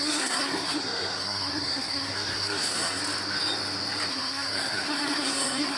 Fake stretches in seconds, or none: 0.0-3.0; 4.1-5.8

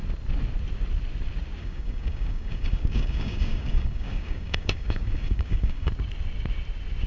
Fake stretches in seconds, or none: 1.6-5.9

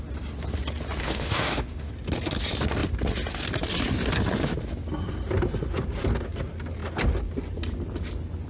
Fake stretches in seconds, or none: 1.0-1.9